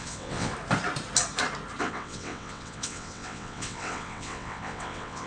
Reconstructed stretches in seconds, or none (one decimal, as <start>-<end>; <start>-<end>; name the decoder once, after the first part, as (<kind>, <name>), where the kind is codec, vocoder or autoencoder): 0.0-0.5 (vocoder, WaveNeXt); 1.8-5.3